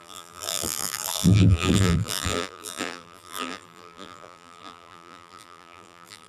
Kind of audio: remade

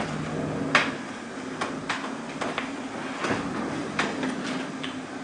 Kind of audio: recorded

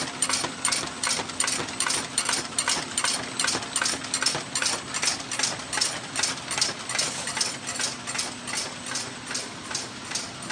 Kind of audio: recorded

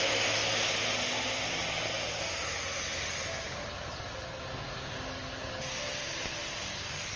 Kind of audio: recorded